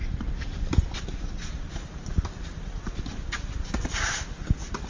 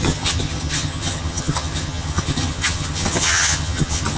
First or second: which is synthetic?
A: second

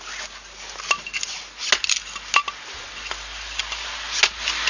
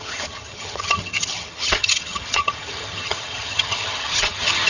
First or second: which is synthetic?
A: second